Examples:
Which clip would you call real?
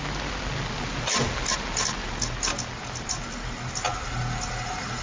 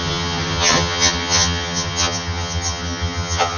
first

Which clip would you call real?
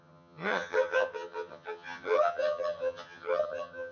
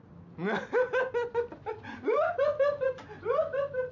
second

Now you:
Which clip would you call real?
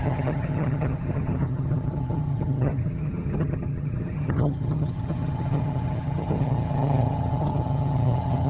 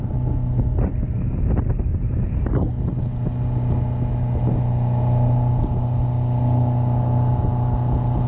second